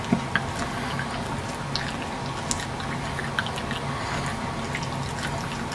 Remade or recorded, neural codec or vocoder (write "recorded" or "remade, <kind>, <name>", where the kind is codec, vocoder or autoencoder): recorded